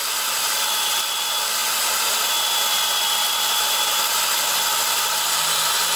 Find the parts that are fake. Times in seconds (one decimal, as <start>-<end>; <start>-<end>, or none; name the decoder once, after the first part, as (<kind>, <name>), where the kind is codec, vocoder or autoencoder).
none